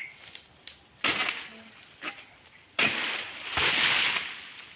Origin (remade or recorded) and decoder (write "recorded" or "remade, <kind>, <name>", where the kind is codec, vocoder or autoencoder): recorded